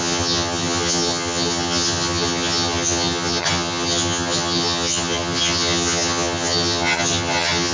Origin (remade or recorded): remade